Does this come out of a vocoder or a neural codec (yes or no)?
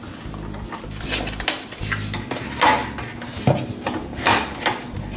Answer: no